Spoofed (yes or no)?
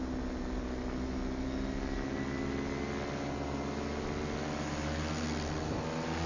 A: no